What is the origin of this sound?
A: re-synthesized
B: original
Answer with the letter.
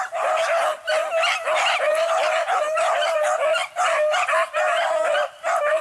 B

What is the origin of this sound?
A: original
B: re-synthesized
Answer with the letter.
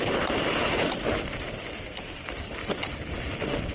A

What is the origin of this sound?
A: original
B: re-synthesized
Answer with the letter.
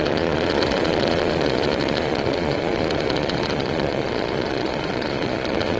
B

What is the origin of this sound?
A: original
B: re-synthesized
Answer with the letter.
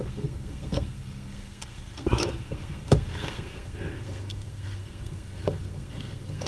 B